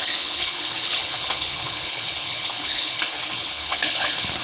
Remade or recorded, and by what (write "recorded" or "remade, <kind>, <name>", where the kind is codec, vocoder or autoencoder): remade, codec, HILCodec